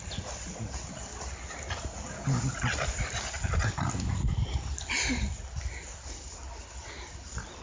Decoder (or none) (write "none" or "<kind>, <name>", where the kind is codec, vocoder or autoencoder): none